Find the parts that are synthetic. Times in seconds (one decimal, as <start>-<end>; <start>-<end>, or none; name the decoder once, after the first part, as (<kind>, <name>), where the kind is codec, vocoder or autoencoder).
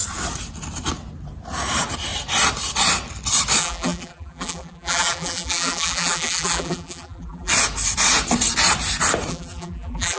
3.6-7.5 (vocoder, BigVGAN v2); 9.3-10.2